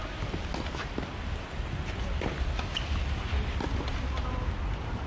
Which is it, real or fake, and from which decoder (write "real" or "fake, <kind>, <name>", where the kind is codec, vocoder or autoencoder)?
real